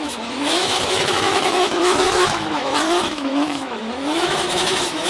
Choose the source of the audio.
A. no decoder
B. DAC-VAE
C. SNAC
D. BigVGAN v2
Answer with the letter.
B